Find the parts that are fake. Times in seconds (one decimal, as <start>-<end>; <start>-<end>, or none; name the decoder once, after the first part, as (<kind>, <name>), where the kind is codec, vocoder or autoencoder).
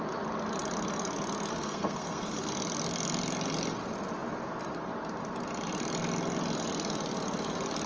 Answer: 1.5-2.5 (codec, SNAC)